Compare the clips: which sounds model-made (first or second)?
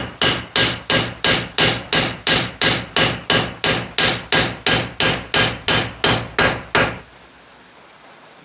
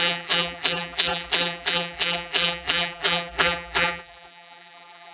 second